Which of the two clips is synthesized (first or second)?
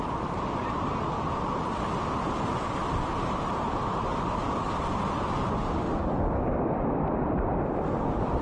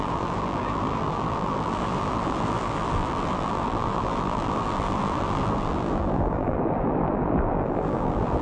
second